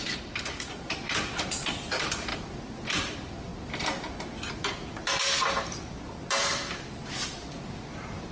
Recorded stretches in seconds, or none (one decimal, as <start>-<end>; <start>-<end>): 3.5-7.5